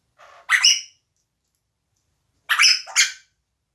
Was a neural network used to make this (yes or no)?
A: no